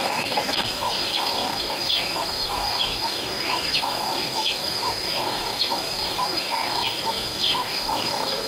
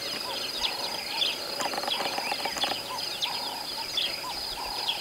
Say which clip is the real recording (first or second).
second